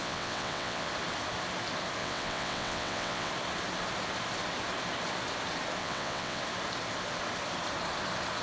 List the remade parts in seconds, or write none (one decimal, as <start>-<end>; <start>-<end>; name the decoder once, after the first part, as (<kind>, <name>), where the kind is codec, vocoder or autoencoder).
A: 0.0-0.9 (vocoder, WaveNeXt); 2.0-3.3; 5.8-6.4